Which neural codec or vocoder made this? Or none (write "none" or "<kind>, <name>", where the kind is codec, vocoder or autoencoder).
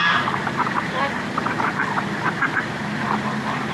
none